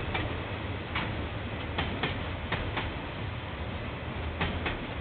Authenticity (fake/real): real